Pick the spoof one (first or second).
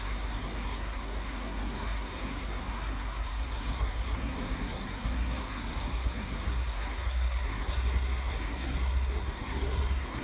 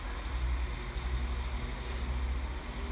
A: first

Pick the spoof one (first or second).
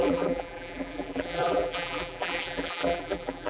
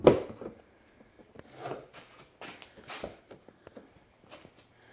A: first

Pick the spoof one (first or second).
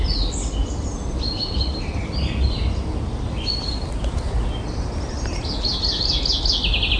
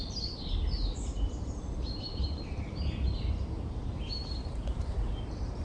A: second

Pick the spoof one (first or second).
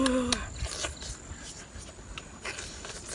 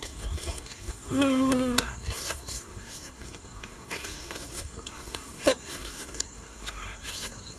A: second